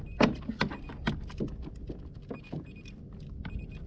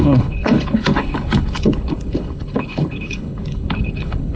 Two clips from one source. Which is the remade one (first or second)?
second